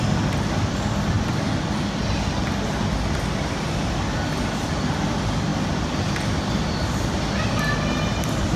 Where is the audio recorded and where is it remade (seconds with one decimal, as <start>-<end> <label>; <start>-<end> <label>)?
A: 0.0-8.6 recorded